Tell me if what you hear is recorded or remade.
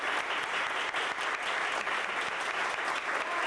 recorded